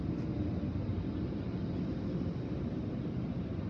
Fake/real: real